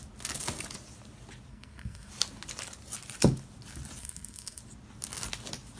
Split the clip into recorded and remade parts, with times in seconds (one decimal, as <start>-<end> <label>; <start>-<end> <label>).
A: 0.0-1.5 recorded; 1.5-2.1 remade; 2.1-4.0 recorded; 4.0-4.6 remade; 4.6-5.8 recorded